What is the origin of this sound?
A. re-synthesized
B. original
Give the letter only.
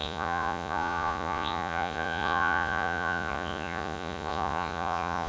A